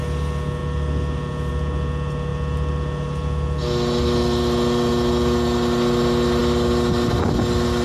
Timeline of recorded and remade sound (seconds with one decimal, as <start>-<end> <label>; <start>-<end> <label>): 0.0-0.6 recorded; 0.6-1.5 remade; 1.5-2.3 recorded; 2.3-4.9 remade; 4.9-7.8 recorded